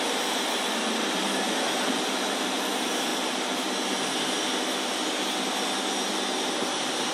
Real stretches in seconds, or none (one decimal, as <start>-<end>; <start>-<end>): 0.0-7.1